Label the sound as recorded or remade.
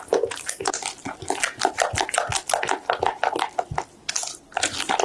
recorded